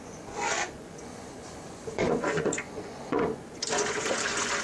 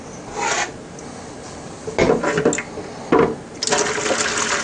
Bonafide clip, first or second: second